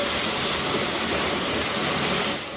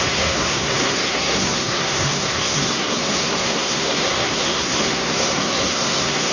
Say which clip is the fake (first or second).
second